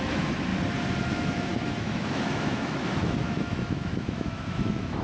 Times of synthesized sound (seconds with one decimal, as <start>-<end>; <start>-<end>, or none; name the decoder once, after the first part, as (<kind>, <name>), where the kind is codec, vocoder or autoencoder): 0.0-0.5 (autoencoder, DAC-VAE); 1.0-5.0